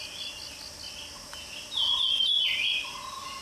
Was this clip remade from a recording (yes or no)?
no